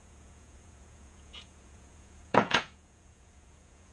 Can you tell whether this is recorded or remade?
remade